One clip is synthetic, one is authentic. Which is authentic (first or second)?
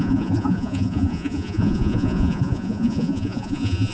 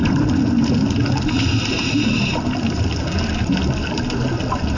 second